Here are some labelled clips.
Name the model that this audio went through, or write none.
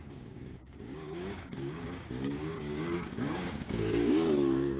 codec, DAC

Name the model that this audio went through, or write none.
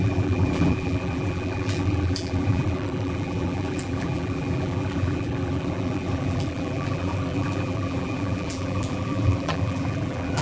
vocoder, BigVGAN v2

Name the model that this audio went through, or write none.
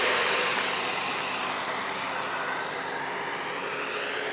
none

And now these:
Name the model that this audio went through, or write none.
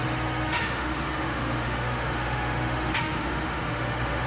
autoencoder, DAC-VAE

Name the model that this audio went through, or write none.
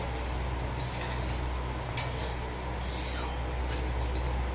none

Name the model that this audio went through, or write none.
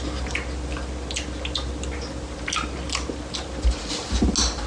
none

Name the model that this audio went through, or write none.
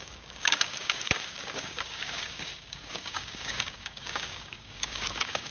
codec, DAC